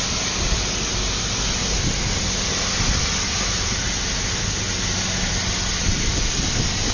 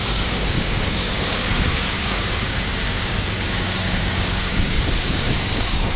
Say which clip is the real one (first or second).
first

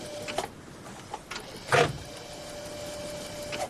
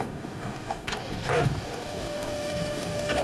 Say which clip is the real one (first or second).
first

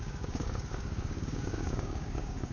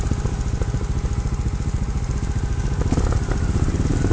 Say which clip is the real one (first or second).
second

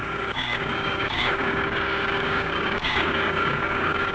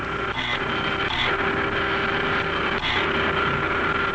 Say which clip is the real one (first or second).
second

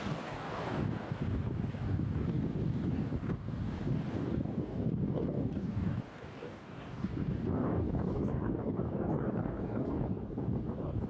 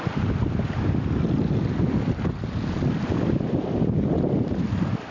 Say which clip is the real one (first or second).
second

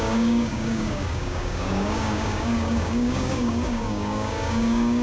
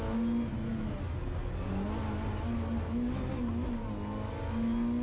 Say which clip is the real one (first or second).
second